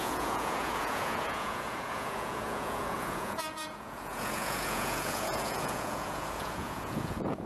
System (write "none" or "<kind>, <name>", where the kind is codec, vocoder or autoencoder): vocoder, Vocos